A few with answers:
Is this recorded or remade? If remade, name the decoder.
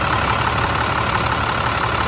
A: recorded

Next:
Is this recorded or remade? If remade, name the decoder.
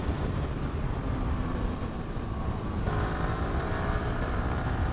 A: remade, vocoder, BigVGAN v2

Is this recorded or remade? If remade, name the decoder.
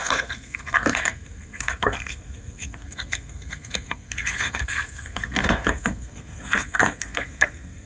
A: remade, codec, SNAC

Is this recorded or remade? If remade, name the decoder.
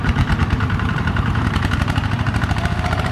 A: remade, vocoder, BigVGAN v2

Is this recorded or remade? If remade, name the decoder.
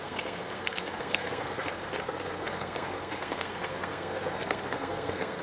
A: remade, codec, SNAC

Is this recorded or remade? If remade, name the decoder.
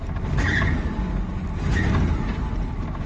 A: recorded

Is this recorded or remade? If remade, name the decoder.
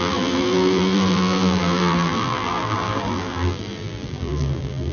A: remade, vocoder, BigVGAN v2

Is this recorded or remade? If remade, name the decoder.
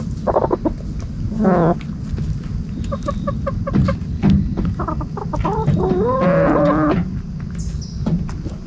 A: recorded